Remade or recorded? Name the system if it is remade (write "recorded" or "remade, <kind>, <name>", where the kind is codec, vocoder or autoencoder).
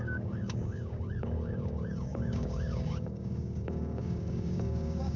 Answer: remade, codec, DAC